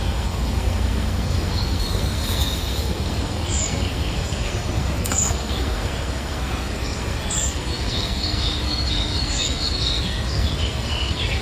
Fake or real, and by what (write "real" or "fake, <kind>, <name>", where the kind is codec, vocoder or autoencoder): fake, codec, SNAC